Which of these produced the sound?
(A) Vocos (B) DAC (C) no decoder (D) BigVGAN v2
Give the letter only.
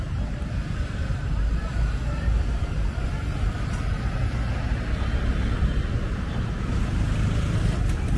D